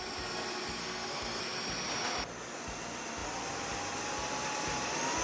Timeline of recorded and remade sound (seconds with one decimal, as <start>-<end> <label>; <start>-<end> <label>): 0.0-0.8 recorded; 0.8-1.4 remade; 1.4-5.2 recorded